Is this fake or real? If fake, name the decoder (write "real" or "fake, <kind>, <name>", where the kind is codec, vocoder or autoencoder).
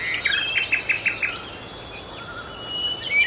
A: real